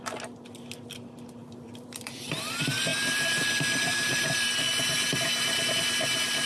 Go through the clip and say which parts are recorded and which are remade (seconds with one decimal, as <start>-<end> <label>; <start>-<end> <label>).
0.0-1.4 recorded; 1.4-2.5 remade; 2.5-2.9 recorded; 2.9-4.6 remade; 4.6-6.5 recorded